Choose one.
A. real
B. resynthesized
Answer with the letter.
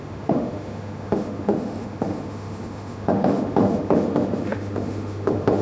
B